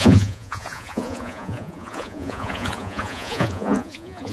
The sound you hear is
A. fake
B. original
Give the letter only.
A